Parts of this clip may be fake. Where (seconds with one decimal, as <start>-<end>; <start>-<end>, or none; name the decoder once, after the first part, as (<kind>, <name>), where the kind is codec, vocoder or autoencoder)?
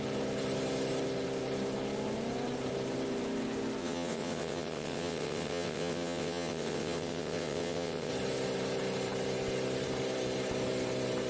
3.8-8.1 (vocoder, WaveNeXt)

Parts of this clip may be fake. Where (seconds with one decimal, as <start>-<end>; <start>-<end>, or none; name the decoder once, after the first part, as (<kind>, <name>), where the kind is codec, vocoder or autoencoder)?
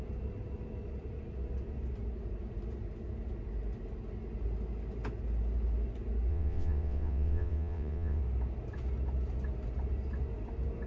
6.3-8.2 (vocoder, WaveNeXt)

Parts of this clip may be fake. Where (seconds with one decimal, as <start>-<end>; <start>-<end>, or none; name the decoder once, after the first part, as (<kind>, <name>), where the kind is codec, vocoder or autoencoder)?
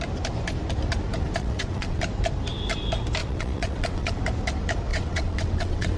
1.4-2.0 (vocoder, WaveNeXt); 3.2-4.2; 4.9-6.0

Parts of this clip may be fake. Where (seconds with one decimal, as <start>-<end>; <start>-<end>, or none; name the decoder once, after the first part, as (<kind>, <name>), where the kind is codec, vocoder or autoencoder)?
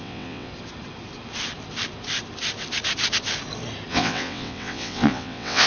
0.0-0.5 (vocoder, WaveNeXt); 3.9-5.7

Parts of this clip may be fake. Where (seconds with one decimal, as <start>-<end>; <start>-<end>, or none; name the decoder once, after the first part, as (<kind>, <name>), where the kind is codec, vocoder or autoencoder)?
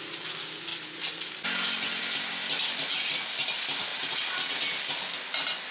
3.9-4.6 (vocoder, WaveNeXt)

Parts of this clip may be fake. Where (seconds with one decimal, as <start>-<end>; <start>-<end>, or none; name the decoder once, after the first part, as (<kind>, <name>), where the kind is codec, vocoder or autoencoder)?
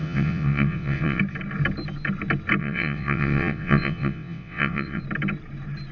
0.0-1.2 (vocoder, WaveNeXt); 2.6-5.0